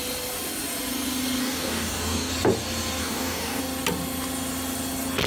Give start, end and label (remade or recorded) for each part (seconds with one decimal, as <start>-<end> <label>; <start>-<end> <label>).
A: 0.0-1.4 recorded; 1.4-2.3 remade; 2.3-3.0 recorded; 3.0-3.6 remade; 3.6-5.3 recorded